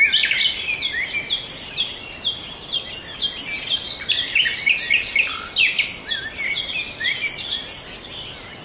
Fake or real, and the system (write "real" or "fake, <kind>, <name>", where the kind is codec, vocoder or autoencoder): real